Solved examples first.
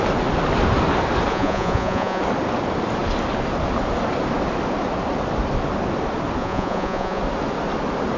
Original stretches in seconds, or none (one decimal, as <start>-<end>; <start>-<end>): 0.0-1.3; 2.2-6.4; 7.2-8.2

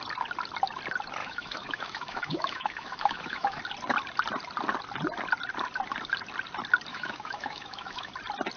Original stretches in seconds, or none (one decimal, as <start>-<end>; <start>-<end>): 0.0-1.2; 3.6-6.9; 8.1-8.6

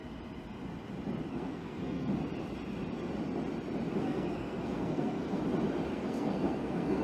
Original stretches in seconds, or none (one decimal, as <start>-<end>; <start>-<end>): 0.0-1.3; 2.1-4.0; 5.4-5.9

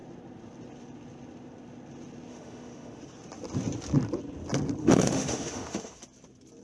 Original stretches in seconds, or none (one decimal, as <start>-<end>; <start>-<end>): 0.0-2.3; 3.0-4.8; 6.0-6.6

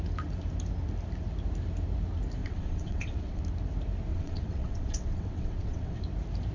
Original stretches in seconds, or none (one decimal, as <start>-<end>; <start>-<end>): 0.0-2.4; 3.4-4.1; 6.0-6.5